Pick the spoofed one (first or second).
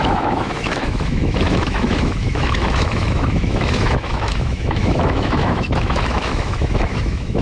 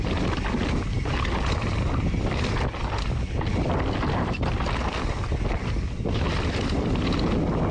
first